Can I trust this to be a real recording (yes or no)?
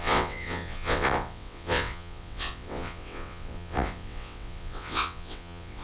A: no